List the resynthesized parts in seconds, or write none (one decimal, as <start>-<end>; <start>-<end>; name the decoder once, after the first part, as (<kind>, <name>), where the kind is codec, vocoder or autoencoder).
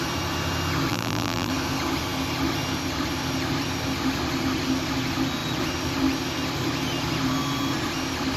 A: 0.9-1.5 (vocoder, BigVGAN v2)